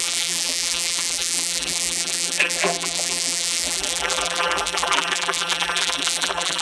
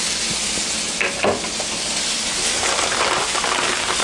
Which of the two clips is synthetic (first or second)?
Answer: first